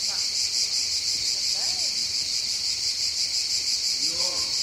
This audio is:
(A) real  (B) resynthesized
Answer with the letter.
A